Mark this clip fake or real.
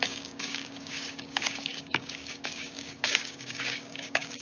fake